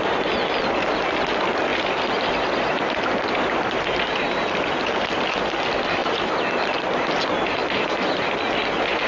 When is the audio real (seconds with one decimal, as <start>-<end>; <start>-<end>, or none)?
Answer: 0.0-6.0; 7.1-9.1